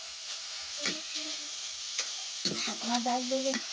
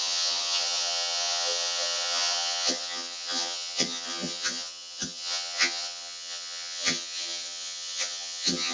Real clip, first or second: first